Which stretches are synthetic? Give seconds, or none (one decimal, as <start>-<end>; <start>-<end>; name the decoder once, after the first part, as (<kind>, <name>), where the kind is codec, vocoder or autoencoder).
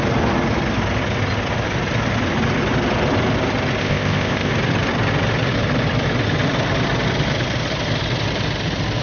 3.8-4.5 (codec, ZipCodec)